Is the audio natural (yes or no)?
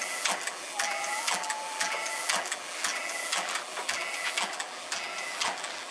no